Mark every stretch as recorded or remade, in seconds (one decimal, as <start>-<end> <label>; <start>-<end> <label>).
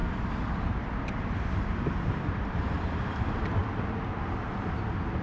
0.0-3.6 remade; 3.6-4.5 recorded; 4.5-5.2 remade